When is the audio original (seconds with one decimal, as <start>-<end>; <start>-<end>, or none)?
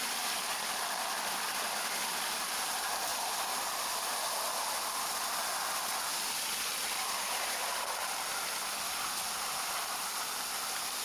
0.0-11.0